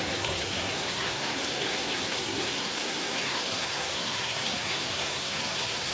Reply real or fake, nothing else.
fake